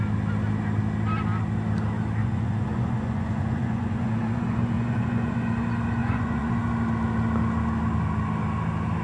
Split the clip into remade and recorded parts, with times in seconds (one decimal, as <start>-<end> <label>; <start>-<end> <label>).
0.0-2.2 recorded; 2.2-5.5 remade; 5.5-6.0 recorded; 6.0-6.5 remade; 6.5-9.0 recorded